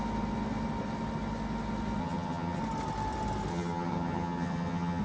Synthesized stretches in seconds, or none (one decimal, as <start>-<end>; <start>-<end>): 2.0-2.6; 3.5-5.0